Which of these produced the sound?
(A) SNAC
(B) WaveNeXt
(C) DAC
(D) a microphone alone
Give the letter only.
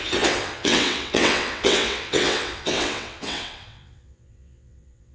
B